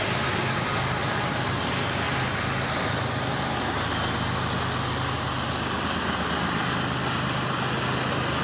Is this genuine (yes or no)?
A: yes